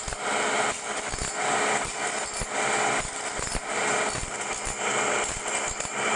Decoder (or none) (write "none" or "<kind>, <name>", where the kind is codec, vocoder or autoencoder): none